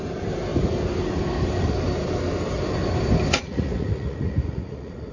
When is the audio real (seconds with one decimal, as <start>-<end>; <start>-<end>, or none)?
0.0-3.3

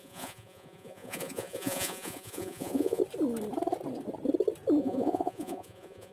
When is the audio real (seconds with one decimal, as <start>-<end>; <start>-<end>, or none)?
3.0-4.8

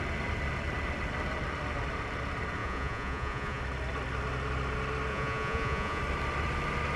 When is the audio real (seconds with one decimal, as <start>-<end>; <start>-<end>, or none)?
0.0-2.6; 3.6-5.1; 6.0-7.0

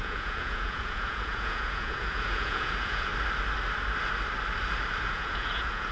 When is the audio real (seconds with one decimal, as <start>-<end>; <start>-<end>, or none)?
3.1-5.0

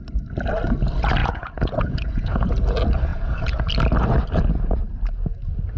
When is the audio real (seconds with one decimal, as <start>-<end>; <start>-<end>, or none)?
0.0-1.2; 2.5-3.1; 3.7-5.8

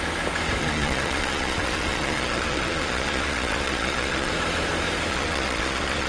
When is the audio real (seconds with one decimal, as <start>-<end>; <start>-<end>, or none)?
0.0-0.6; 4.3-5.1

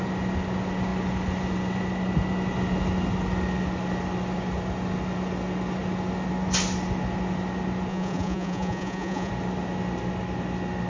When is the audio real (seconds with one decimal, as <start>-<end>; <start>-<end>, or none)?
0.0-7.9; 9.3-10.9

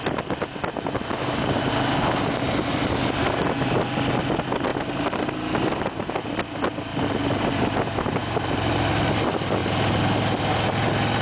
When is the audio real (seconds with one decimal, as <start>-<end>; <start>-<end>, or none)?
0.0-11.2